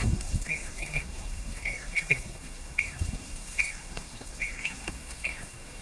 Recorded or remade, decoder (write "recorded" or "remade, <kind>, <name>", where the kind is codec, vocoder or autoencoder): remade, codec, SNAC